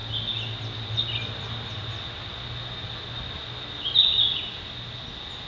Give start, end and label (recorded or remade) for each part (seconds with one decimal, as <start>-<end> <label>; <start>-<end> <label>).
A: 0.0-5.5 recorded